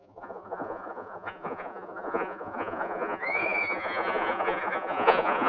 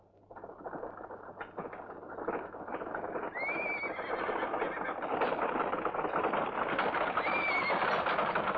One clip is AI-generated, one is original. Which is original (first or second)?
second